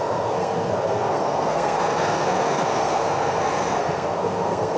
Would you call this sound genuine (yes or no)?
no